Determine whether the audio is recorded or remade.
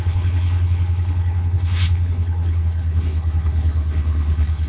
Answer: remade